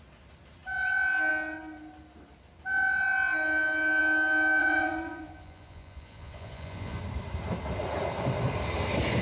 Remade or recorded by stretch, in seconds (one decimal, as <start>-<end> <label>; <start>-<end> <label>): 0.0-4.6 recorded; 4.6-7.0 remade; 7.0-9.2 recorded